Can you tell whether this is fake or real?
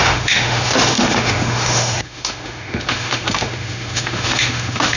fake